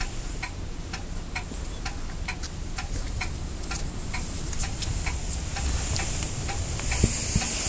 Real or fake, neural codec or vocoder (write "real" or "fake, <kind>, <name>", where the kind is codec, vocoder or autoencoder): real